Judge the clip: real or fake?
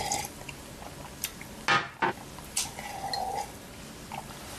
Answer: real